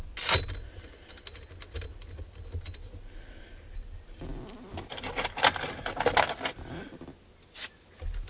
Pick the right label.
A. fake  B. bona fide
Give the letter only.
B